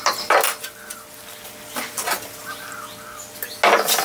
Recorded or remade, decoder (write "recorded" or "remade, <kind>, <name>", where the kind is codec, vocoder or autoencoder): recorded